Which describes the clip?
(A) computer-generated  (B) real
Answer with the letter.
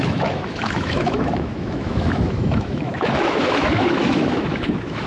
A